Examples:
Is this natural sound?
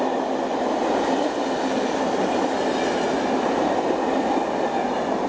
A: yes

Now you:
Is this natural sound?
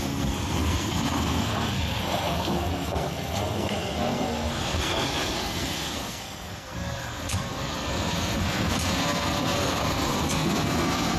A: no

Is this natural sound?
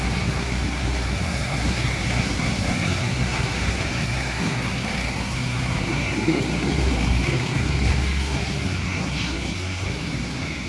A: no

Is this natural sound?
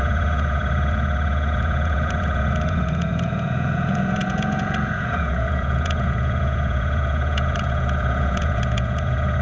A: no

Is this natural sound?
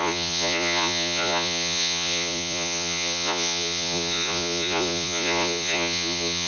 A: no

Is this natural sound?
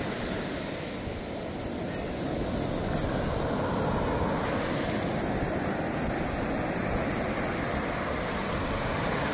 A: yes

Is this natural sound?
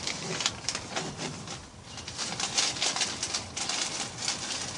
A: yes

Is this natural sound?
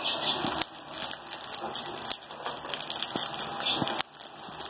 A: yes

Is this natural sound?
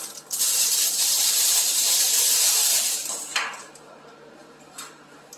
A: no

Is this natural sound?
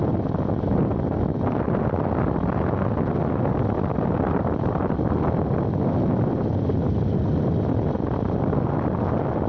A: yes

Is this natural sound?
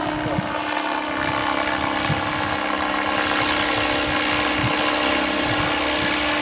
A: yes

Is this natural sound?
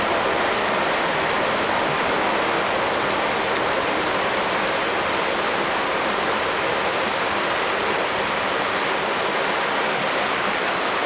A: yes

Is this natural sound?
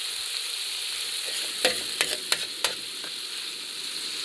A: yes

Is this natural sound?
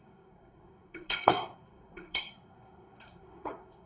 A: no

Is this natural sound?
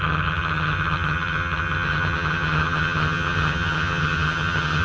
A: no